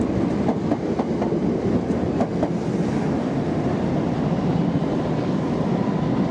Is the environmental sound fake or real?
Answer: real